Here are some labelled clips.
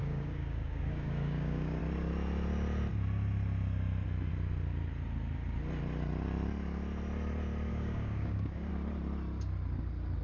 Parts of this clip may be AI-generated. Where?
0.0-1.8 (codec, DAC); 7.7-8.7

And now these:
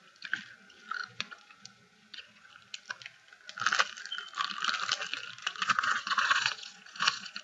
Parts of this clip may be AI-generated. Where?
1.0-2.5 (vocoder, Vocos); 5.4-7.4